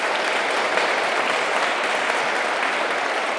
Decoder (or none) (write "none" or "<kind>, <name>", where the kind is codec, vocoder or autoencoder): none